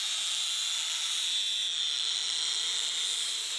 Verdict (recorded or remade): recorded